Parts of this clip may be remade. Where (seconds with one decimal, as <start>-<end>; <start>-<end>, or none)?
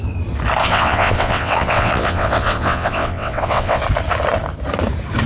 0.6-3.8